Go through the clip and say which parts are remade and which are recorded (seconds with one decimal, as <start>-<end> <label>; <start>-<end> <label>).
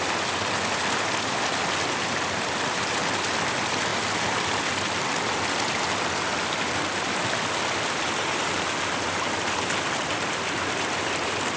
0.0-11.6 recorded